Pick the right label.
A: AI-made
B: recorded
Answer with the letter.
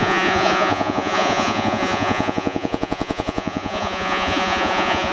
A